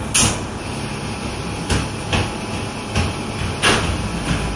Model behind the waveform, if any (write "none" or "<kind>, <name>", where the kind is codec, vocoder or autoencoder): none